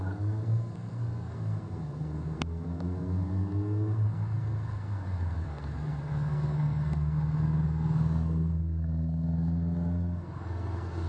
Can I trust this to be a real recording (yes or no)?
no